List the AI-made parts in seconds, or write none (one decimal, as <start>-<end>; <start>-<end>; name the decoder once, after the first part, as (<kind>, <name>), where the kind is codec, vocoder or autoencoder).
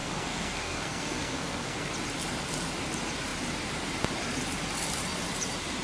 0.0-1.9 (codec, SNAC)